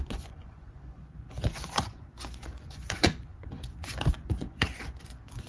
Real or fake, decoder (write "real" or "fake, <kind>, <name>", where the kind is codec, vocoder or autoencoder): fake, vocoder, Vocos